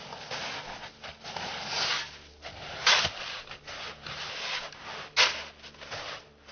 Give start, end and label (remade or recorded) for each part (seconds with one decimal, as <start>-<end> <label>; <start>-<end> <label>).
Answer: 0.0-6.5 recorded